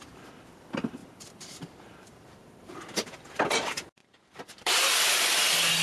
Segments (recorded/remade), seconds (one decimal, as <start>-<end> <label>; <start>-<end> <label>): 0.0-1.0 recorded; 1.0-3.2 remade; 3.2-4.0 recorded; 4.0-4.8 remade; 4.8-5.8 recorded